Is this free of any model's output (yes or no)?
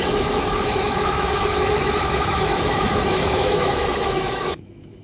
no